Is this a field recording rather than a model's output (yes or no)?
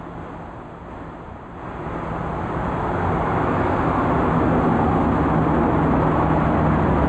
yes